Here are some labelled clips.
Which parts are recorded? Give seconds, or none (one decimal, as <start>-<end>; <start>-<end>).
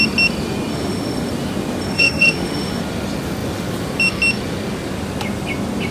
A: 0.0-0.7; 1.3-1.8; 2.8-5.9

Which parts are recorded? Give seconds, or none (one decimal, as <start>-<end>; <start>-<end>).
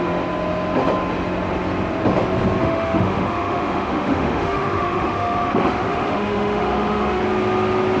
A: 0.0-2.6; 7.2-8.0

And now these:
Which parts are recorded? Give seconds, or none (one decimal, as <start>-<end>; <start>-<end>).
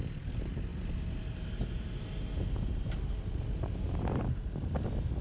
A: 0.0-5.2